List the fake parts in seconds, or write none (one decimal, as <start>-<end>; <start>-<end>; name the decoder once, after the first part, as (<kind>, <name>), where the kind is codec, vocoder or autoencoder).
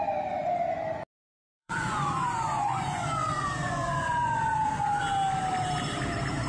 1.3-5.0 (vocoder, Vocos)